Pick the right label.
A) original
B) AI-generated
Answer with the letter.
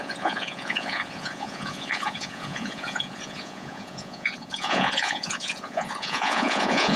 B